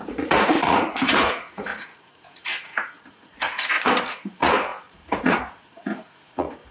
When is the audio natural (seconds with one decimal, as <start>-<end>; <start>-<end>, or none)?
none

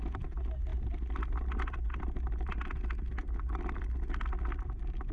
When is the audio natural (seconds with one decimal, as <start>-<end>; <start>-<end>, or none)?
0.0-5.1

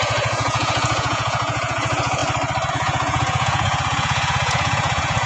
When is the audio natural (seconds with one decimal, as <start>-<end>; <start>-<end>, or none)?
2.2-2.7

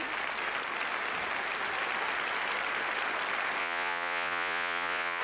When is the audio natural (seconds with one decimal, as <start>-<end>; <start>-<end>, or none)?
0.0-3.6

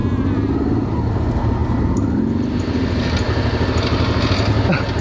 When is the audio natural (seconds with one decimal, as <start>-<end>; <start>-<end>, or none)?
0.0-5.0